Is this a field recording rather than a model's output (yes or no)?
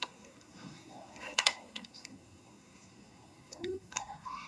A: no